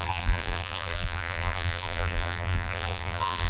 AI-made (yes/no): yes